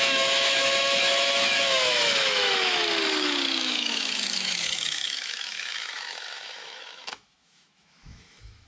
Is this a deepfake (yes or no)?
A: yes